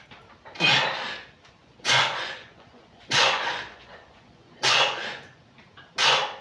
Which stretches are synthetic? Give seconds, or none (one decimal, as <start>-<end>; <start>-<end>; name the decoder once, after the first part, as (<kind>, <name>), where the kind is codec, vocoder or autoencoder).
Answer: 1.6-5.4 (vocoder, Vocos)